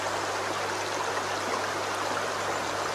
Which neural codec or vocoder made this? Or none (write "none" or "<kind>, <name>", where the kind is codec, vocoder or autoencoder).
none